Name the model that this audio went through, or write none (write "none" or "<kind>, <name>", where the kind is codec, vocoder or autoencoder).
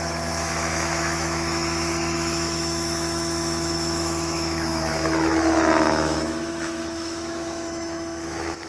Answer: autoencoder, DAC-VAE